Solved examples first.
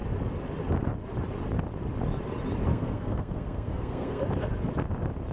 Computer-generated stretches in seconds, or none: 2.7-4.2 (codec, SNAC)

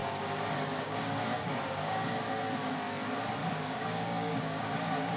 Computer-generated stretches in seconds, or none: 0.0-2.4 (codec, DAC); 3.4-5.2

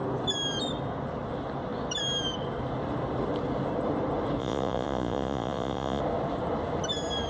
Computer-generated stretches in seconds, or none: 4.4-6.0 (vocoder, Vocos)